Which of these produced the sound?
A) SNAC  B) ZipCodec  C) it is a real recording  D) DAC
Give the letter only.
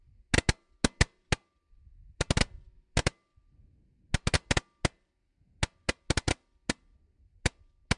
C